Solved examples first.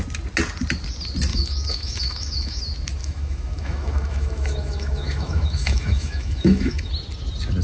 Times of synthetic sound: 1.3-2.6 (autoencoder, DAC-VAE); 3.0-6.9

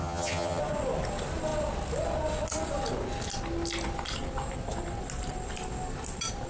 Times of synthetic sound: 0.0-0.6 (vocoder, HiFi-GAN)